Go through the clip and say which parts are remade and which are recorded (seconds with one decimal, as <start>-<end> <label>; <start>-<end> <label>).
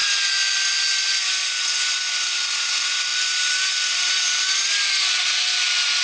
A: 0.0-6.0 recorded